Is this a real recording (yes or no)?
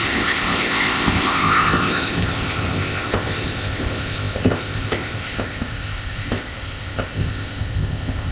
no